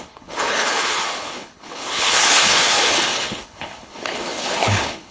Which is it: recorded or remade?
remade